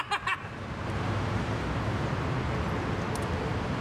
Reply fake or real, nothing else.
real